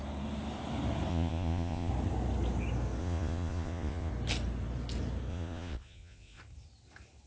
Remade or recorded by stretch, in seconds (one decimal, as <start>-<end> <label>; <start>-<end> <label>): 0.0-1.1 recorded; 1.1-1.9 remade; 1.9-3.0 recorded; 3.0-4.1 remade; 4.1-5.3 recorded; 5.3-6.4 remade; 6.4-7.3 recorded